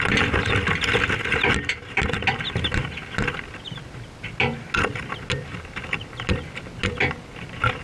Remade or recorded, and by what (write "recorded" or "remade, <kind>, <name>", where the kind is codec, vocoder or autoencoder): recorded